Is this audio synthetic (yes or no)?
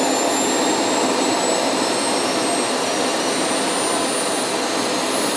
no